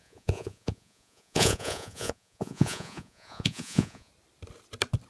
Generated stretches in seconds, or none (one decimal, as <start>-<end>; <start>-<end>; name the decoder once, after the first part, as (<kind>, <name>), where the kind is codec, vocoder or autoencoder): 0.0-4.1 (vocoder, Vocos)